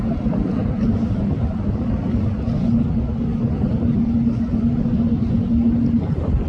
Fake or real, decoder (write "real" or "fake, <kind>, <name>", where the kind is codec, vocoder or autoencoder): real